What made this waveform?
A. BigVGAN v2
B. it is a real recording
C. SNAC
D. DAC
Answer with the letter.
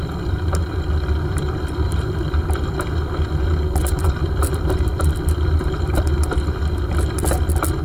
A